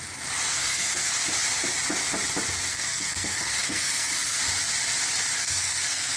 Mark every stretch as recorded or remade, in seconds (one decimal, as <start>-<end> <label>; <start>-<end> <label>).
0.0-0.5 recorded; 0.5-1.1 remade; 1.1-2.7 recorded; 2.7-4.4 remade; 4.4-5.4 recorded; 5.4-6.2 remade